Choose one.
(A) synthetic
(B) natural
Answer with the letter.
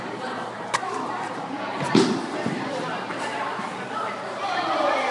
A